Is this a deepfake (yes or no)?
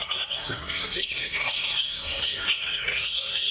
yes